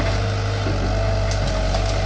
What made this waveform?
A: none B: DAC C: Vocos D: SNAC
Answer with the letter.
A